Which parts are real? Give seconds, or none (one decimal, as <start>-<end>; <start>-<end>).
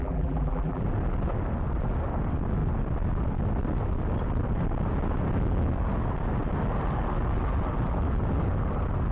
0.8-9.1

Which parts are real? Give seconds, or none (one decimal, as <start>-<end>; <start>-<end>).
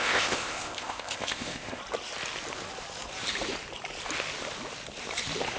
1.8-5.6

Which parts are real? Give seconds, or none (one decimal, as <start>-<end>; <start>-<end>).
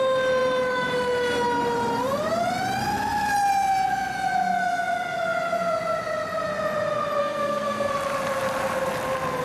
0.0-7.2; 7.9-9.4